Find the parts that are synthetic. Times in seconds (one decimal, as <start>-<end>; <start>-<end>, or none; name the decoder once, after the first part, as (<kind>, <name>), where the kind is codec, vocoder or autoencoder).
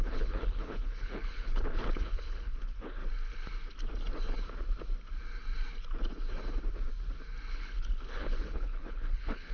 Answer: 0.0-3.0 (codec, HILCodec); 7.5-9.5